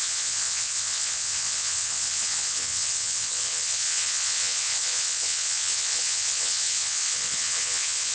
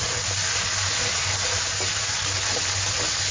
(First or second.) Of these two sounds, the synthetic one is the first